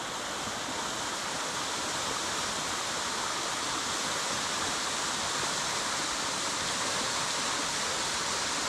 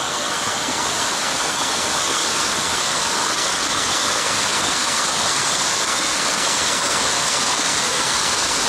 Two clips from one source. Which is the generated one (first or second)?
second